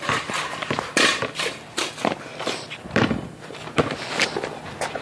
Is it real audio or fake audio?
real